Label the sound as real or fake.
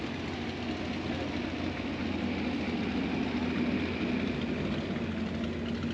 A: real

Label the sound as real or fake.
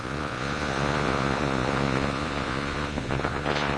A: fake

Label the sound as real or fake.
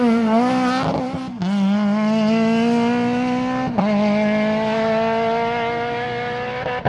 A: real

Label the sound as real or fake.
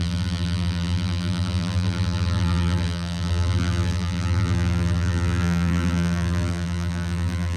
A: fake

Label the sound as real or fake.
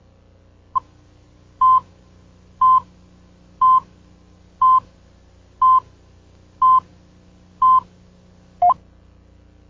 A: real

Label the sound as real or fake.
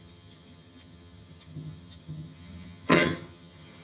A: fake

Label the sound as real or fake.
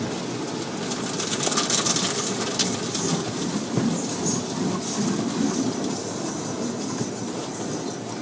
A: real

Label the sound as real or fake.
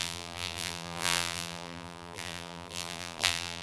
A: fake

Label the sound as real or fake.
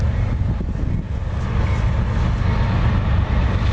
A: real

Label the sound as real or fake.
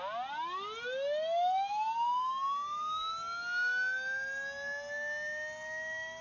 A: real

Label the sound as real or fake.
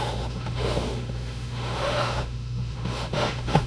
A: fake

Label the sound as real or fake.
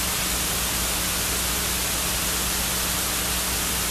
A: real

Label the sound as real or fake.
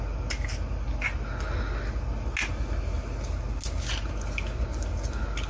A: real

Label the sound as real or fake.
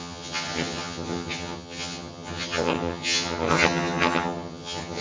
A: fake